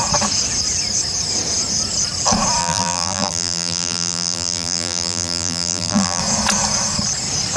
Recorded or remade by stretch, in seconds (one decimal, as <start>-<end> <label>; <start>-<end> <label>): 0.0-2.6 recorded; 2.6-6.2 remade; 6.2-7.6 recorded